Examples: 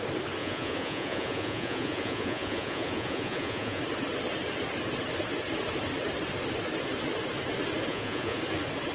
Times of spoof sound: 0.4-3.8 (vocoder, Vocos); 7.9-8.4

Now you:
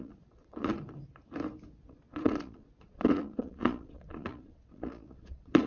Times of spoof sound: 0.0-1.0 (vocoder, Vocos); 1.8-5.7